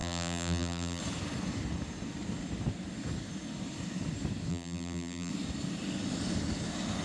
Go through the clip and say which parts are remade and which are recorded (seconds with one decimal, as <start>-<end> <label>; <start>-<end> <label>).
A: 0.0-1.0 remade; 1.0-4.5 recorded; 4.5-5.3 remade; 5.3-7.0 recorded